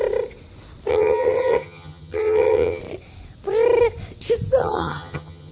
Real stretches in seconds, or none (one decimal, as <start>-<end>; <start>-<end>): 0.0-0.9; 2.8-4.6